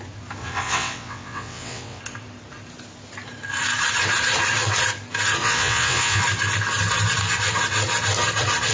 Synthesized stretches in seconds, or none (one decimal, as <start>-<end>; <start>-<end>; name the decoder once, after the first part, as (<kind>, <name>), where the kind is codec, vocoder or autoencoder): 0.4-2.0 (vocoder, WaveNeXt); 5.4-6.2